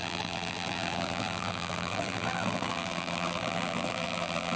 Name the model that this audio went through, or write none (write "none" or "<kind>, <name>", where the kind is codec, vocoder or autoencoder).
vocoder, BigVGAN v2